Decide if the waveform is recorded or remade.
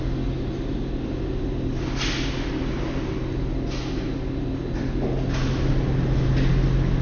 recorded